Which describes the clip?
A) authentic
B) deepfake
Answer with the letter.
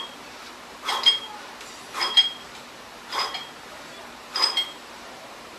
B